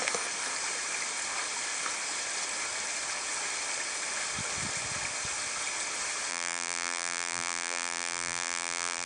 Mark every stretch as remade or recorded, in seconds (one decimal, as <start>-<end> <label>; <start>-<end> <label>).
0.0-6.3 recorded; 6.3-9.1 remade